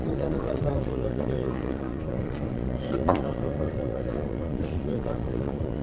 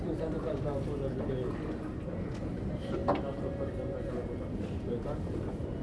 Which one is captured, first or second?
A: second